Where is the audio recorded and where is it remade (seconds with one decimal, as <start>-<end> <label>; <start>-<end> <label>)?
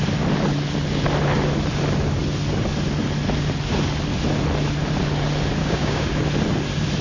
0.0-5.6 recorded; 5.6-6.1 remade; 6.1-7.0 recorded